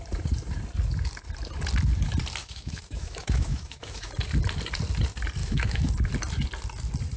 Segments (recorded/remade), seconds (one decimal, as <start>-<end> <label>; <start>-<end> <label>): 0.0-2.4 recorded; 2.4-4.1 remade; 4.1-5.4 recorded; 5.4-5.9 remade; 5.9-7.2 recorded